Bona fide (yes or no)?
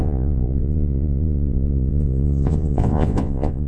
no